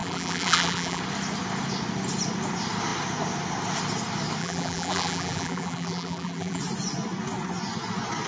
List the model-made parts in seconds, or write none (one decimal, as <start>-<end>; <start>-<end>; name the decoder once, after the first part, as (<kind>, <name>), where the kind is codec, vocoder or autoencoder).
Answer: 0.0-1.0 (vocoder, BigVGAN v2); 4.4-6.6